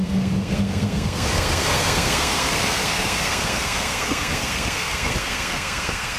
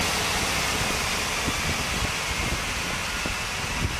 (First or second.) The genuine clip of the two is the second